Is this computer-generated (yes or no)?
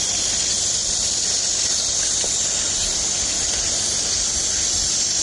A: no